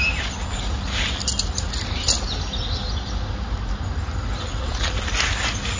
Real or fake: real